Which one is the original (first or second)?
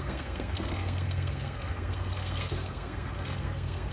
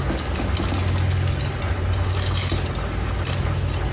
second